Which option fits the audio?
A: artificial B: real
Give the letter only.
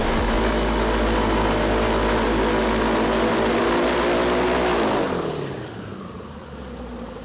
B